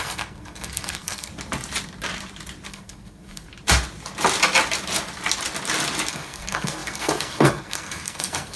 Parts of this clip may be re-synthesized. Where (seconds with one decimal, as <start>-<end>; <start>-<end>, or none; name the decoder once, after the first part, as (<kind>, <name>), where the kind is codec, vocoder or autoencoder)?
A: 0.0-1.3 (codec, SNAC); 2.7-3.5; 6.1-8.6